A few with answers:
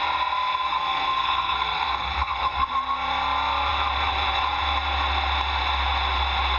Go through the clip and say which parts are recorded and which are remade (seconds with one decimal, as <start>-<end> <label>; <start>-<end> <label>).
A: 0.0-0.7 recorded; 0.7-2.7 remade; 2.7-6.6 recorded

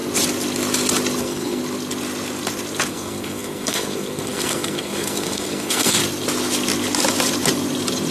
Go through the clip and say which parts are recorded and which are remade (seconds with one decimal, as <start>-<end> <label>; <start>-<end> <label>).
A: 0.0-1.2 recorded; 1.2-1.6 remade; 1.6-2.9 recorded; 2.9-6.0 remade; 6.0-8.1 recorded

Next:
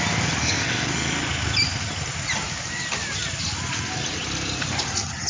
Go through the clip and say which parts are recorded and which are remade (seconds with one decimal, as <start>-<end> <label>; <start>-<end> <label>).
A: 0.0-0.4 recorded; 0.4-1.2 remade; 1.2-5.3 recorded